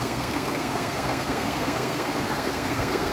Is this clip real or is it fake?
fake